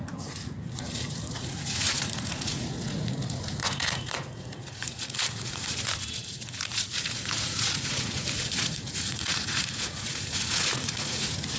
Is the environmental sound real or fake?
fake